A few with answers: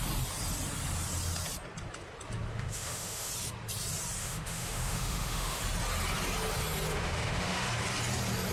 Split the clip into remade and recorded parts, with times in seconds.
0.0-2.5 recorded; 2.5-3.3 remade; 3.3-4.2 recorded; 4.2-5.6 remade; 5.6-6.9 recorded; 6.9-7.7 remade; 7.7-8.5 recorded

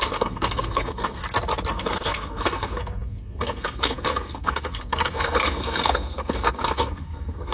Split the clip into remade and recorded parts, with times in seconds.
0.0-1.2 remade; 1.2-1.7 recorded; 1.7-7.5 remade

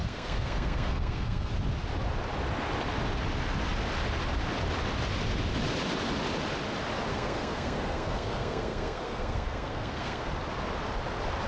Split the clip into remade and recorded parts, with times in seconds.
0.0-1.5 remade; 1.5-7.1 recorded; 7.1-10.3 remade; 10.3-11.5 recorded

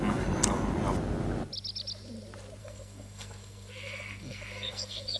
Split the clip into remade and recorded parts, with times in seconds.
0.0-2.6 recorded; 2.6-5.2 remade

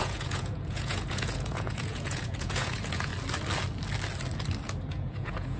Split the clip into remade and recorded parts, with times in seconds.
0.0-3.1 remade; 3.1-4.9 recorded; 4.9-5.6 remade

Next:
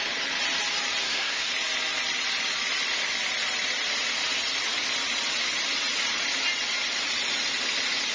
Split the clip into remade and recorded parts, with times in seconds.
0.0-1.0 recorded; 1.0-1.5 remade; 1.5-8.1 recorded